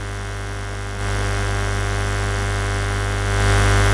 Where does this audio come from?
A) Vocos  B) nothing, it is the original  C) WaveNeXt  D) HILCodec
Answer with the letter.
B